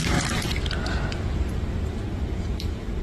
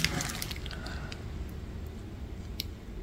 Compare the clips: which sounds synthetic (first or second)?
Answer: first